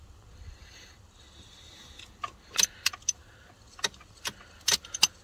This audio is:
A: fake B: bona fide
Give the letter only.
B